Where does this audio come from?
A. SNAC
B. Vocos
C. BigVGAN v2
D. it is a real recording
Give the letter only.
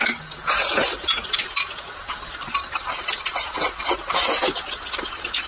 D